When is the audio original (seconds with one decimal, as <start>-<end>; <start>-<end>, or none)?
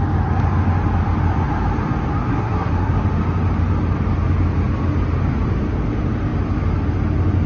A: 0.0-2.3; 2.9-7.5